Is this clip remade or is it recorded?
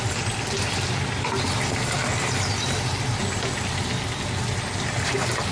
recorded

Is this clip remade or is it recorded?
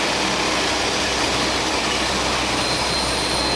recorded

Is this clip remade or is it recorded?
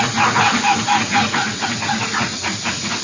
remade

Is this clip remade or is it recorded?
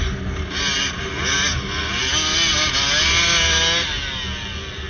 recorded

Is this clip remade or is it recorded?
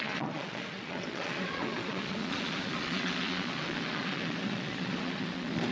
remade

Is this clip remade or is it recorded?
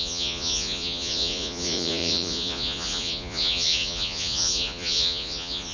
remade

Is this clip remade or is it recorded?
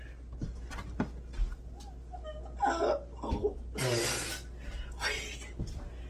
recorded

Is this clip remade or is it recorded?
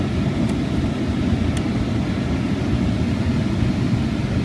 recorded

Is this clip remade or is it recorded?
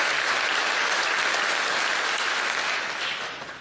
recorded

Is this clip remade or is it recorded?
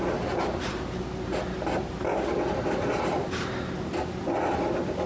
recorded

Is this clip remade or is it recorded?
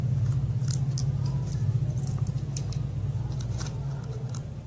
recorded